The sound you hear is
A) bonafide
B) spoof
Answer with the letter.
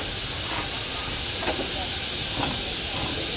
A